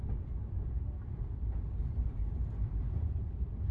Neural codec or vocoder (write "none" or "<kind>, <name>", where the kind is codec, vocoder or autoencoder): vocoder, BigVGAN v2